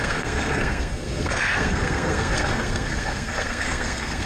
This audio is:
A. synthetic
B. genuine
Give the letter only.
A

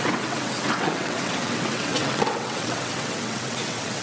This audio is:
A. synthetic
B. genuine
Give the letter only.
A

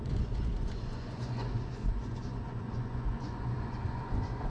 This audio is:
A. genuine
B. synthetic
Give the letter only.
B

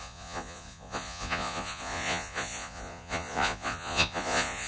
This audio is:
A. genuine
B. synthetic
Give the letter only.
B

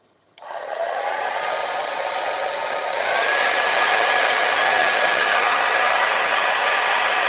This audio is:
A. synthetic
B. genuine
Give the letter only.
A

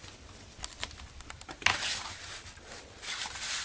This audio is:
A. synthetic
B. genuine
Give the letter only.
B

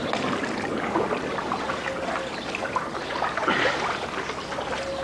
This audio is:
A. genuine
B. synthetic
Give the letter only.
A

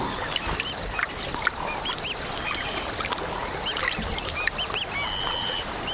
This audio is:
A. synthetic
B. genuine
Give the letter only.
B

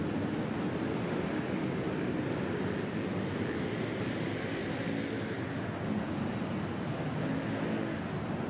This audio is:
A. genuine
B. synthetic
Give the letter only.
A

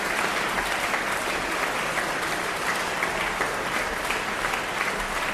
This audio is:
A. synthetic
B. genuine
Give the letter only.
B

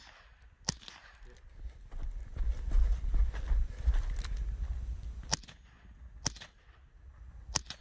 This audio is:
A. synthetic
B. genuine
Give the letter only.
B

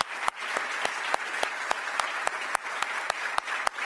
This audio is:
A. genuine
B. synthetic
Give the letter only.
A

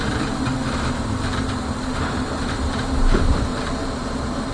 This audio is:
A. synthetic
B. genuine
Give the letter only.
A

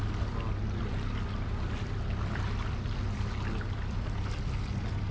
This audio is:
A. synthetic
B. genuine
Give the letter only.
B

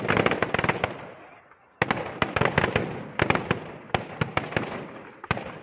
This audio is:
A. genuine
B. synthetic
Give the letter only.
A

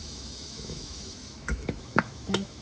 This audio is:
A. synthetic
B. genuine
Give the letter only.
A